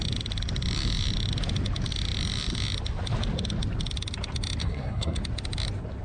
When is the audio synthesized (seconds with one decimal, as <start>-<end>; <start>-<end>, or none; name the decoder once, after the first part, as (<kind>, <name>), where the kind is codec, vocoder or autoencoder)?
4.6-5.2 (codec, SNAC)